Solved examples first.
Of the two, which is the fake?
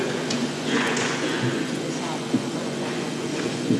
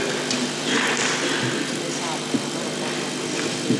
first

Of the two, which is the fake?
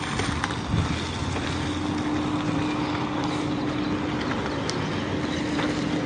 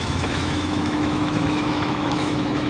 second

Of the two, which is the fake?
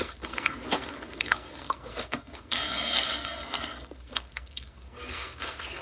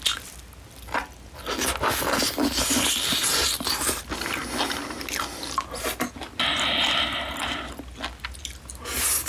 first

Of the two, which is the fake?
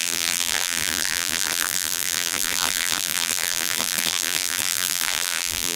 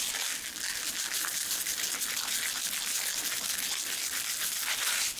first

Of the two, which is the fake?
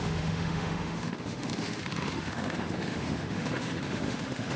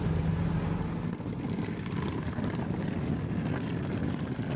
first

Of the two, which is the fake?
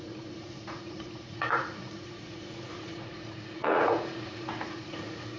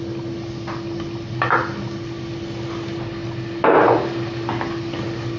first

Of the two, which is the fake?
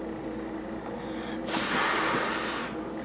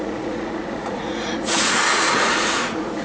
second